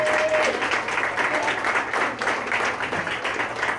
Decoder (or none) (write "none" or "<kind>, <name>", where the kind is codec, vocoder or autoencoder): none